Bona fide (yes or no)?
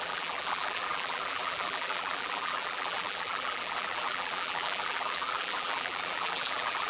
no